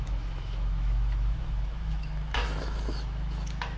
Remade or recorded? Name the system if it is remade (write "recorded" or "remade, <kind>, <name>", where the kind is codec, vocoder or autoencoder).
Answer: remade, autoencoder, DAC-VAE